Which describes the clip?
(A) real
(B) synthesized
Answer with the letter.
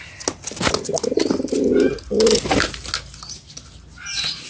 A